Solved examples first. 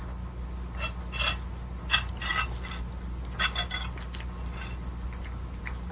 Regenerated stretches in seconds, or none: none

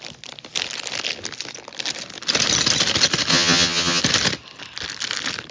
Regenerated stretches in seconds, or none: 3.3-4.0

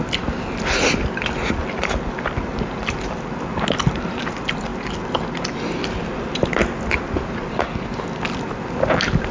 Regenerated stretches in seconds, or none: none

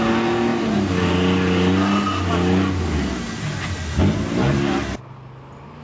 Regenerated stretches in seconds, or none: none

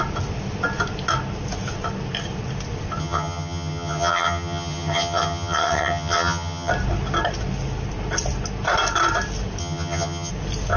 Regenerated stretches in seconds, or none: 3.0-6.7; 9.6-10.3

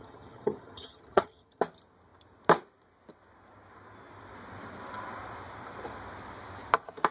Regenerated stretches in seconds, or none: 0.0-1.6